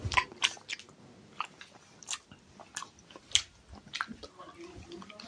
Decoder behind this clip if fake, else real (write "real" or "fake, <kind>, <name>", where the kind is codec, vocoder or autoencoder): real